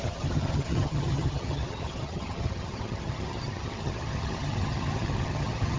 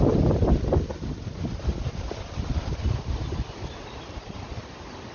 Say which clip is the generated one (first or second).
first